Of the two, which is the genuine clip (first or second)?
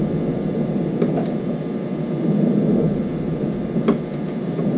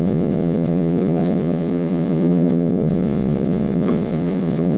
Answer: first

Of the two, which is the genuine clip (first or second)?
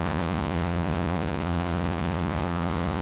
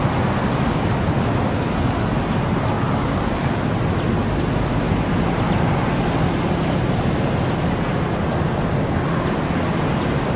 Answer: second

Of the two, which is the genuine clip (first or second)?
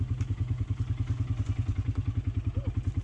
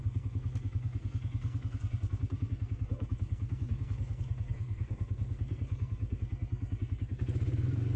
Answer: first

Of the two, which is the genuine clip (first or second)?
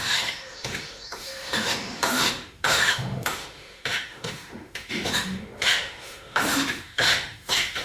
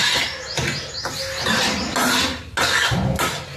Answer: second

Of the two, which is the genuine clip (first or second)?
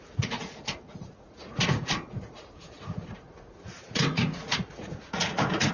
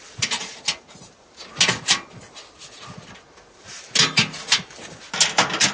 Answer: second